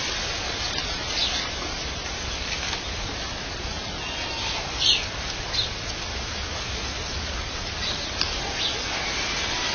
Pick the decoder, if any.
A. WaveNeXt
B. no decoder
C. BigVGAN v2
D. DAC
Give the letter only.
B